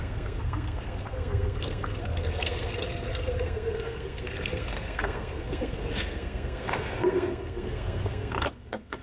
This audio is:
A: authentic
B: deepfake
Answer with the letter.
B